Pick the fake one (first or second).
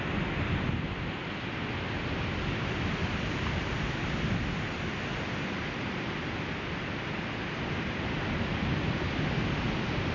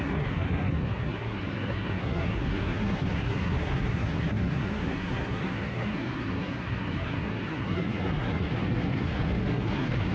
second